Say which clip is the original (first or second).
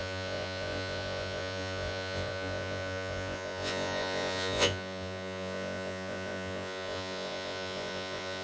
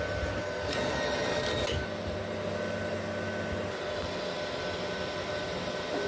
second